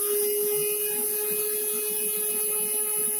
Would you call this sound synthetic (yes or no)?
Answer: no